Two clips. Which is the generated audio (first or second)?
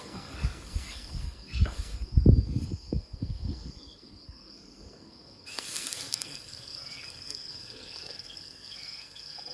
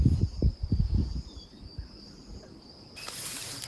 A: first